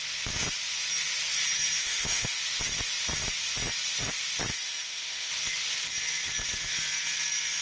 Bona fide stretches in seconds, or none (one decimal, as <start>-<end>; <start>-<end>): 0.0-1.8; 2.4-4.5; 5.3-7.6